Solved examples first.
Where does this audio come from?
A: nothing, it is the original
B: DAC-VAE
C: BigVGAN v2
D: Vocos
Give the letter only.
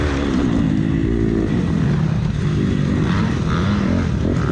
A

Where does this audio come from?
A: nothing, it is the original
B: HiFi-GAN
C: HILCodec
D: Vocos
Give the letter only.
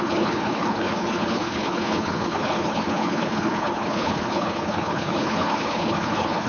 C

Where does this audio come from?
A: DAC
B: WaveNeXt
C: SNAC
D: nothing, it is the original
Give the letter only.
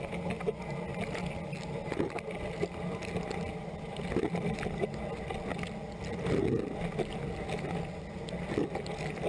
D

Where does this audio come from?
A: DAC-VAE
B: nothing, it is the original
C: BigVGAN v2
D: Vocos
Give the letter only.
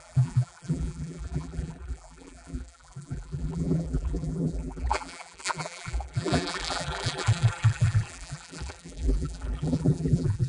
C